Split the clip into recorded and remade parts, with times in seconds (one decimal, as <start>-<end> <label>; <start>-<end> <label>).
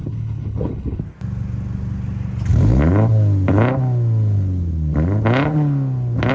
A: 0.0-1.0 remade; 1.0-6.3 recorded